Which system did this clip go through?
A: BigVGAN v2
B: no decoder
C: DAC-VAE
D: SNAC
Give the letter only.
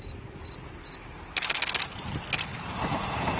B